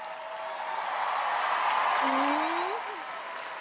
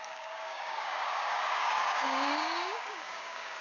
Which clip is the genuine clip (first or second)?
first